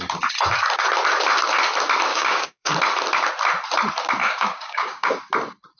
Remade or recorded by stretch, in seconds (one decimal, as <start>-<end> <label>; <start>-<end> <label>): 0.0-2.1 recorded; 2.1-2.7 remade; 2.7-4.2 recorded; 4.2-5.1 remade; 5.1-5.8 recorded